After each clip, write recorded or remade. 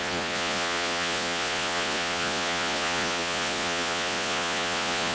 remade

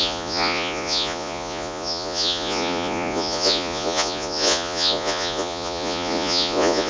remade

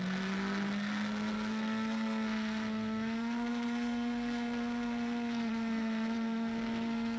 remade